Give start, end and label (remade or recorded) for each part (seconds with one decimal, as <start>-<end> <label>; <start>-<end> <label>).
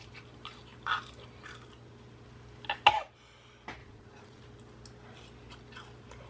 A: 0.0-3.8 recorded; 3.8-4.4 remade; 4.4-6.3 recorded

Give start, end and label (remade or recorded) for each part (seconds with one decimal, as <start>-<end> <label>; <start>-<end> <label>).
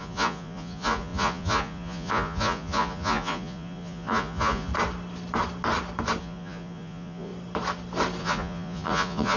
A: 0.0-4.7 remade; 4.7-6.2 recorded; 6.2-7.3 remade; 7.3-8.2 recorded; 8.2-9.4 remade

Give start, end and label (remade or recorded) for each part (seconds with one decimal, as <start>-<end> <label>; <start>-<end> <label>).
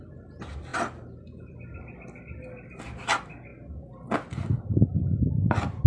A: 0.0-5.9 recorded